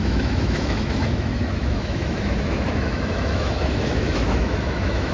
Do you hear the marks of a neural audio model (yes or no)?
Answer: yes